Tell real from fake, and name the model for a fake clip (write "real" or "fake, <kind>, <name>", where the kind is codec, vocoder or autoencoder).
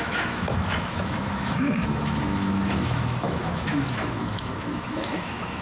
fake, autoencoder, DAC-VAE